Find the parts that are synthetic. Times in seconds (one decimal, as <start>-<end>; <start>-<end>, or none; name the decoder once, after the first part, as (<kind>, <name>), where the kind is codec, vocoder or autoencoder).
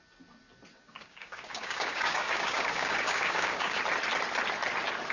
0.7-3.8 (codec, DAC)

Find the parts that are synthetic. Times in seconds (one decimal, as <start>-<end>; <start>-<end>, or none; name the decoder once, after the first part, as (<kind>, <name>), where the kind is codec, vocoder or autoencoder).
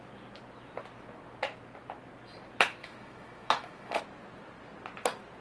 2.8-4.0 (autoencoder, DAC-VAE)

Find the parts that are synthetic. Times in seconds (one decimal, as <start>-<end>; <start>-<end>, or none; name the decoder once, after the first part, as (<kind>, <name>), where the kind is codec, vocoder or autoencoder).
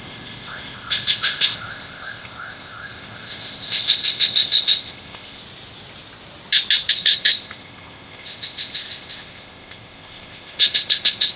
0.0-5.4 (codec, ZipCodec); 6.9-11.4